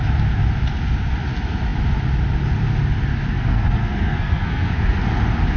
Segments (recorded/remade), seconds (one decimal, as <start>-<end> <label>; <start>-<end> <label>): 0.0-3.3 recorded; 3.3-4.7 remade; 4.7-5.6 recorded